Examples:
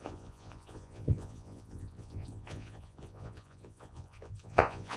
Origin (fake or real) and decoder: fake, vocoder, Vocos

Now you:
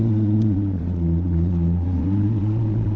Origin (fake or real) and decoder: fake, vocoder, Vocos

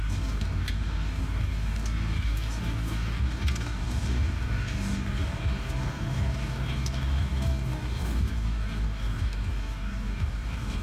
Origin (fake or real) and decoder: fake, codec, DAC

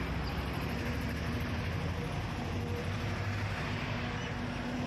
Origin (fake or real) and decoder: real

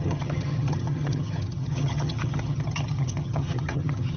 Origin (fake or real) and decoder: fake, vocoder, HiFi-GAN